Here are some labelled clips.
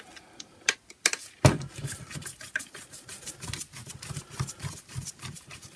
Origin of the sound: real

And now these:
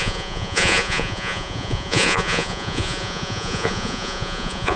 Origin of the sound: fake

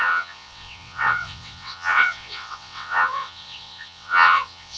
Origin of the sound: fake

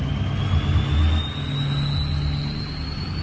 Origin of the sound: real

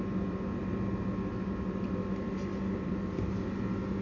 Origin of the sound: real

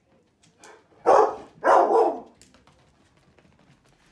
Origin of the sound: real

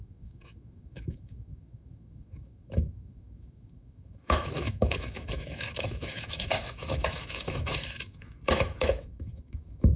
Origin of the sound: fake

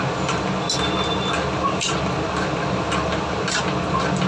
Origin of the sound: real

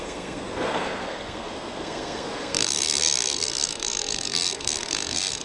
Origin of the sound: fake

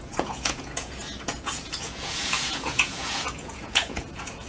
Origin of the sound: fake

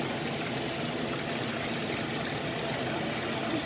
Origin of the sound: real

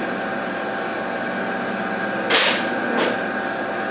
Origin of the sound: real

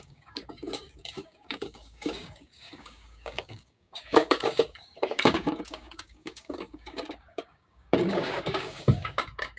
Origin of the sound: fake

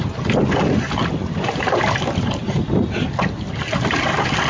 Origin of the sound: real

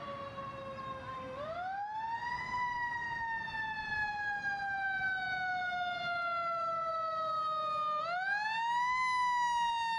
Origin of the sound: real